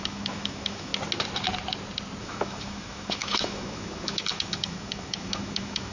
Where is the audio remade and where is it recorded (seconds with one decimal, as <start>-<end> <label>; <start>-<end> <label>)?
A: 0.0-0.9 remade; 0.9-2.2 recorded; 2.2-5.9 remade